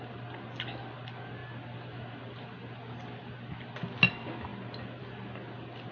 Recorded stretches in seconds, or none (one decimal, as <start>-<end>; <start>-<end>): 0.0-5.9